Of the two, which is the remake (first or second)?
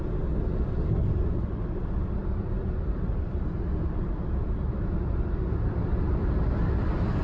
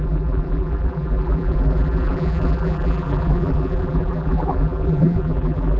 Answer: second